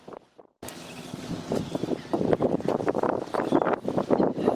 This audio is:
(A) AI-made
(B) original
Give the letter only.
B